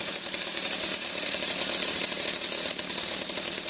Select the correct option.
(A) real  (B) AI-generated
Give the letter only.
B